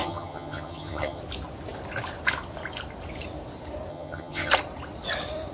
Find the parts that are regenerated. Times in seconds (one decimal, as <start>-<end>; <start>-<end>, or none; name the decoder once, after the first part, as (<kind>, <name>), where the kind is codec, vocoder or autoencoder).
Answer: 0.0-1.2 (vocoder, HiFi-GAN); 3.9-4.5